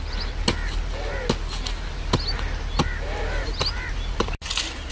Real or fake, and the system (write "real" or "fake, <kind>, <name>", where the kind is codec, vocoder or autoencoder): real